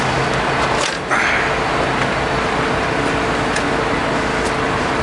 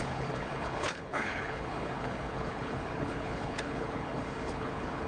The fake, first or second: second